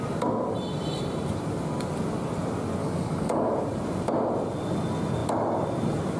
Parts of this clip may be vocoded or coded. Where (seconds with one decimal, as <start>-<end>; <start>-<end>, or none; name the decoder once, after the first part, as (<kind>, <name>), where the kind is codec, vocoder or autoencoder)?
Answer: 2.8-3.5 (codec, DAC)